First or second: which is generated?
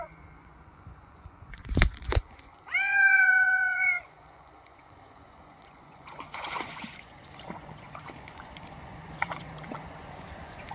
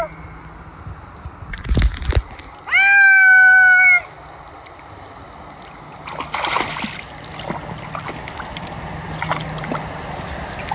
first